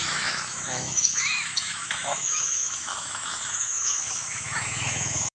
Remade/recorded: remade